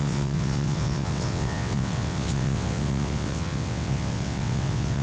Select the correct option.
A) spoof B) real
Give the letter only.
A